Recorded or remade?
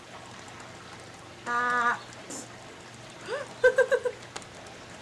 recorded